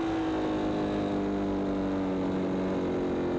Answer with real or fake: real